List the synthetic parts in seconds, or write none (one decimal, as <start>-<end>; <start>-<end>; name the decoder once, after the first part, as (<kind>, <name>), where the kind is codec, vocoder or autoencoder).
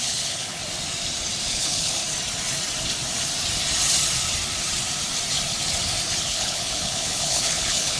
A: 0.0-0.6 (codec, HILCodec); 1.5-2.0; 6.2-8.0